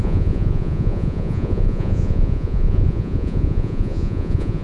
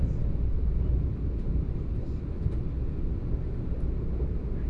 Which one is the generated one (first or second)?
first